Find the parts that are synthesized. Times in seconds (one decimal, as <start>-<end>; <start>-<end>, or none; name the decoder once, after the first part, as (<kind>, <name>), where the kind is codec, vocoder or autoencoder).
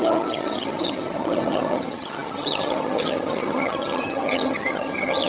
0.0-5.3 (vocoder, HiFi-GAN)